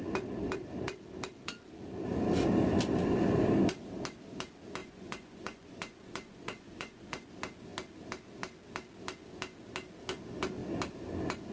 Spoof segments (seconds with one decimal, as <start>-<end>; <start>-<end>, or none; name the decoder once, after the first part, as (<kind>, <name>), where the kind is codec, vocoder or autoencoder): 4.8-7.3 (vocoder, Vocos)